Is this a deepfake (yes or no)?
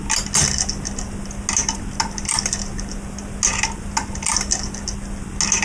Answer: no